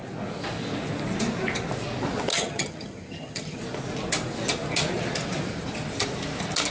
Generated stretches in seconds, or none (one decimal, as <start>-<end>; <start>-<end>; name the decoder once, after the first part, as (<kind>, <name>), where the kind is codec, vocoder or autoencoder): 2.3-3.6 (vocoder, HiFi-GAN)